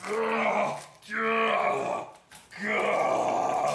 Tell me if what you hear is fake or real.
real